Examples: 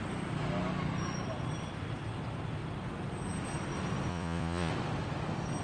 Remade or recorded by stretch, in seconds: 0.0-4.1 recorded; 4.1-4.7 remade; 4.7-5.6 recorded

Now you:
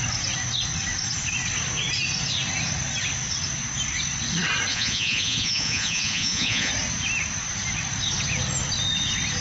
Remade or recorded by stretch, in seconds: 0.0-4.7 recorded; 4.7-6.7 remade; 6.7-9.4 recorded

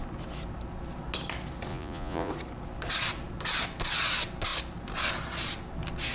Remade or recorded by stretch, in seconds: 0.0-1.7 recorded; 1.7-2.3 remade; 2.3-6.1 recorded

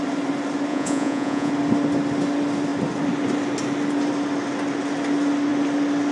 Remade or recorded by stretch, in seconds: 0.0-0.7 recorded; 0.7-1.5 remade; 1.5-6.1 recorded

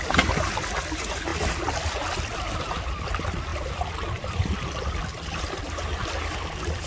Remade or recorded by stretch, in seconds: 0.0-6.9 recorded